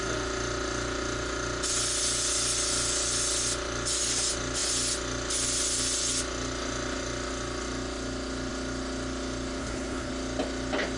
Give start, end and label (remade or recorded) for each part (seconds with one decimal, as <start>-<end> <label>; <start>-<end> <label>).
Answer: 0.0-9.6 recorded; 9.6-10.1 remade; 10.1-11.0 recorded